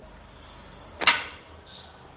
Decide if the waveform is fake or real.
real